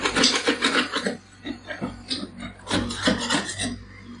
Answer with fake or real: real